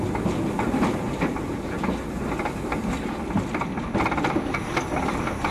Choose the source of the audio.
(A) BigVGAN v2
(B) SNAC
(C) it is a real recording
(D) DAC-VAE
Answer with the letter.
C